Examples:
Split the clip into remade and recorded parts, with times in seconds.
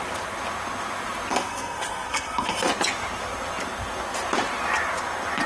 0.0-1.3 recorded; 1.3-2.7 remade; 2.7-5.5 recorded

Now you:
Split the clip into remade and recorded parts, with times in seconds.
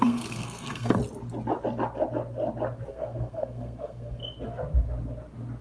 0.0-1.0 remade; 1.0-2.9 recorded; 2.9-4.2 remade; 4.2-5.6 recorded